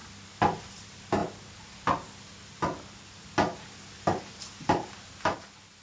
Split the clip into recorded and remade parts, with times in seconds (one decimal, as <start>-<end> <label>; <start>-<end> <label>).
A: 0.0-5.8 recorded